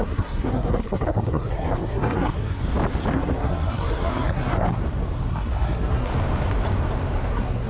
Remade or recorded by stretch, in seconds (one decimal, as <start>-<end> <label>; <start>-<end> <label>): 0.0-2.6 remade; 2.6-3.1 recorded; 3.1-4.8 remade; 4.8-5.3 recorded; 5.3-6.1 remade; 6.1-7.3 recorded; 7.3-7.7 remade